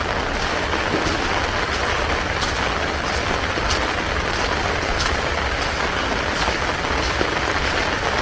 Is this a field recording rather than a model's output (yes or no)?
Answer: yes